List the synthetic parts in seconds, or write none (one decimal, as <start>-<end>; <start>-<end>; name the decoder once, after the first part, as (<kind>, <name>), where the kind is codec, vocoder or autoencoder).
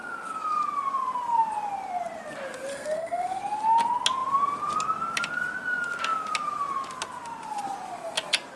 2.7-3.4 (codec, SNAC)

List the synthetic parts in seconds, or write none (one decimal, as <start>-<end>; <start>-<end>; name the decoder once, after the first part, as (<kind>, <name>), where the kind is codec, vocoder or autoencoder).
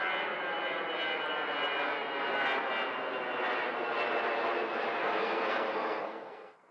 5.0-6.7 (codec, SNAC)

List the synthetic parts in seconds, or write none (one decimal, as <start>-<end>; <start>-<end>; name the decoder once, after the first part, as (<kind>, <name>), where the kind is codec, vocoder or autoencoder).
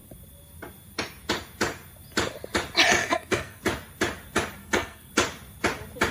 3.0-3.6 (codec, SNAC); 4.6-5.1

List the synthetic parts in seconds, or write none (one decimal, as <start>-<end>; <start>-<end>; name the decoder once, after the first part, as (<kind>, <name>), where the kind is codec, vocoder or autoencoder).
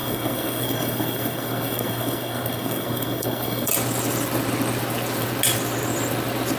0.0-3.7 (codec, SNAC)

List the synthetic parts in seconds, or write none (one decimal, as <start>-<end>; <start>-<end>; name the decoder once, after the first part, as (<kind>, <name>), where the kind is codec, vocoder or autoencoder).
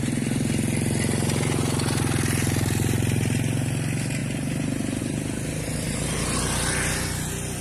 none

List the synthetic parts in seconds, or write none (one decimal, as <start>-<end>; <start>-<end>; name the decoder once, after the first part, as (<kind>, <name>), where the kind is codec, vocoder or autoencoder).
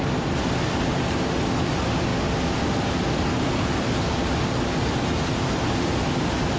none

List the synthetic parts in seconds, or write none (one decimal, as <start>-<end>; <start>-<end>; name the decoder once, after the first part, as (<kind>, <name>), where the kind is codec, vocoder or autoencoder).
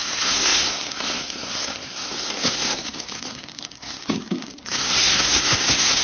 0.0-6.0 (codec, SNAC)